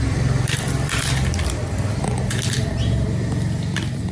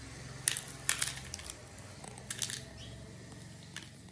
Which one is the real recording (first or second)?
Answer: second